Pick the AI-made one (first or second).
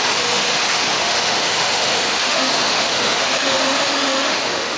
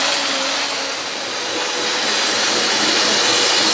first